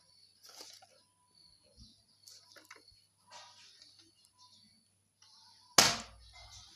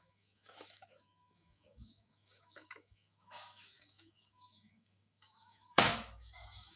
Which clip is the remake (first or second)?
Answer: second